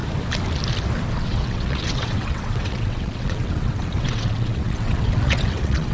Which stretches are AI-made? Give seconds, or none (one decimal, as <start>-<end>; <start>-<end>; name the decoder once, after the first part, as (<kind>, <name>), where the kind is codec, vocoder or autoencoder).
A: 1.2-5.9 (vocoder, WaveNeXt)

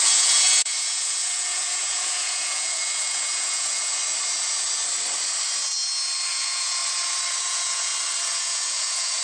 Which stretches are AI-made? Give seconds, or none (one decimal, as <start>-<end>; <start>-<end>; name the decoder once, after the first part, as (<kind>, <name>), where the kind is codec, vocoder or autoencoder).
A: 0.0-4.0 (vocoder, Vocos); 6.3-6.8; 7.4-7.9; 8.4-9.2

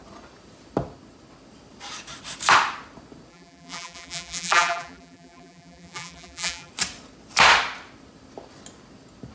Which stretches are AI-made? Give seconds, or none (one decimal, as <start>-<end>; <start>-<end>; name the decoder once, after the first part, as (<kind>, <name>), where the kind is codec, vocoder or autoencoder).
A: 3.3-6.7 (vocoder, BigVGAN v2)

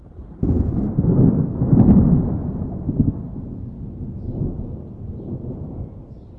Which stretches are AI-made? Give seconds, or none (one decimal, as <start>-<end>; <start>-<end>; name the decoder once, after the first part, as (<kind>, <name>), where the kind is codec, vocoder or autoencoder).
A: 2.4-6.4 (vocoder, BigVGAN v2)

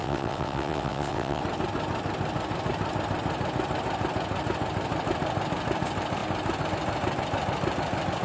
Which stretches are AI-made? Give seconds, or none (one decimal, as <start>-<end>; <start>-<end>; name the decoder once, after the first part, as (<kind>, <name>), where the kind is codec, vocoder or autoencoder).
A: 0.0-1.4 (vocoder, WaveNeXt)